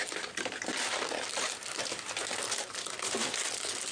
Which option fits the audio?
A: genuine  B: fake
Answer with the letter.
A